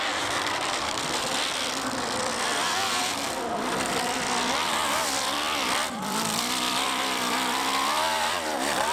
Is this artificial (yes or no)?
yes